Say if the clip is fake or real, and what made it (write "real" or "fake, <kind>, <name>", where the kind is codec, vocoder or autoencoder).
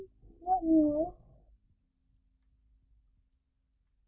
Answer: real